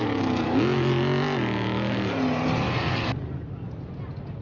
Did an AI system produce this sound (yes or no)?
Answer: no